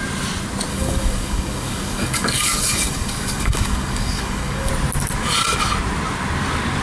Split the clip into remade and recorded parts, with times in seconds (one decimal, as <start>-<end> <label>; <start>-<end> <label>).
0.0-0.7 recorded; 0.7-4.7 remade; 4.7-6.8 recorded